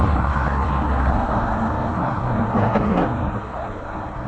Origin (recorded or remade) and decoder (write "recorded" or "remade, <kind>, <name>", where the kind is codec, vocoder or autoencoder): remade, codec, SNAC